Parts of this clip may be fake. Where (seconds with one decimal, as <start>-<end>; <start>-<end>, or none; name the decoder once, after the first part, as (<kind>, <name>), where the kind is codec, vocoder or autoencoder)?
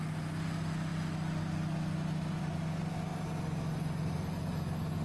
none